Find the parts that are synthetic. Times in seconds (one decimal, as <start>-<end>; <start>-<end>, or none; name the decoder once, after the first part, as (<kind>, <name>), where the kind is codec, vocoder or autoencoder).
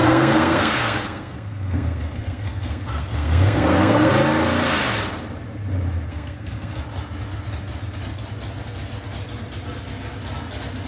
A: 0.0-4.1 (codec, SNAC); 6.1-6.8